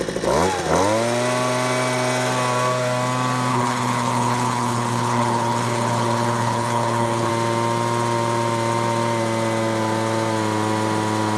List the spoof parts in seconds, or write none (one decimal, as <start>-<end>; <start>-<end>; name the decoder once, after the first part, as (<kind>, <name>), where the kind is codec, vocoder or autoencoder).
3.5-7.3 (codec, HILCodec)